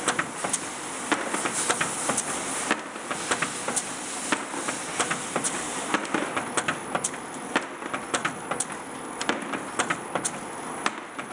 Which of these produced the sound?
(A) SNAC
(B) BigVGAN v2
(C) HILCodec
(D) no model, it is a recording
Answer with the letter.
D